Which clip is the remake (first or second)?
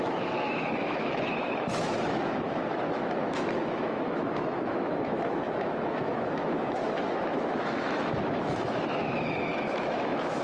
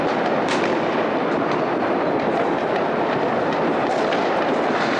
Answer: first